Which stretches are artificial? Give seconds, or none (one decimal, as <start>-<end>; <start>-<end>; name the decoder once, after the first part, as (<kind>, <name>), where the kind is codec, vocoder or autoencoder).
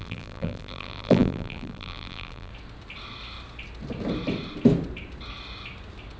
0.0-2.5 (vocoder, BigVGAN v2)